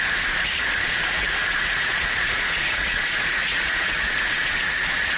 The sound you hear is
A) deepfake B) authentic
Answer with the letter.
A